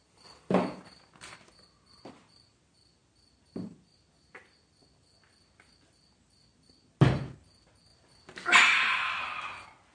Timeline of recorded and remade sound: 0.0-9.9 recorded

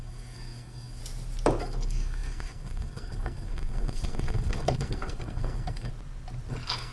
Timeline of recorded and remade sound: 0.0-1.0 remade; 1.0-1.6 recorded; 1.6-5.9 remade; 5.9-6.5 recorded; 6.5-6.9 remade

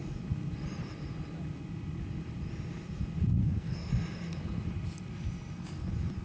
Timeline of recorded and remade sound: 0.0-3.4 recorded; 3.4-3.9 remade; 3.9-6.2 recorded

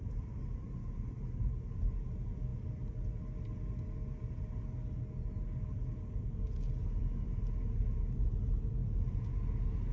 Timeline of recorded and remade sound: 0.0-9.9 recorded